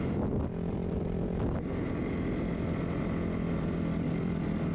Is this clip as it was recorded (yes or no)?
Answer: yes